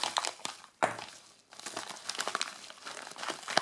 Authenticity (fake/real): real